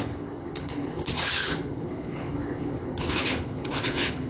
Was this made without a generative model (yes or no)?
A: no